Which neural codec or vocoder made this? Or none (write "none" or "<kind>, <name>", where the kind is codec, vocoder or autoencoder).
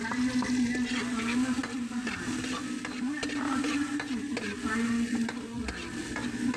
none